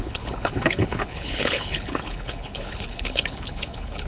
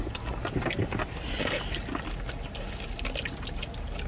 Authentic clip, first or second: second